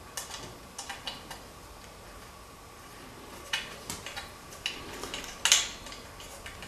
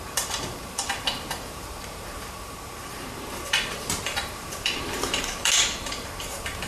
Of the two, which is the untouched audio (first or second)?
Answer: first